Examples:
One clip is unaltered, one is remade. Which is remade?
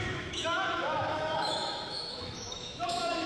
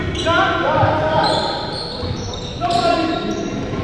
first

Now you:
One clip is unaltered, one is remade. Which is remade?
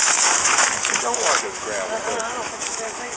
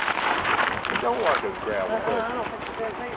first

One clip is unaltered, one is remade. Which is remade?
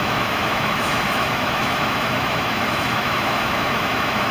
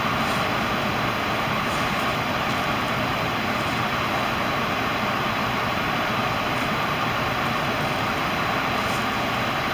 first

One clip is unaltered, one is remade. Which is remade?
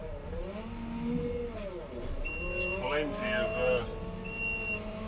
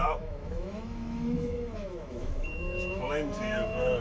second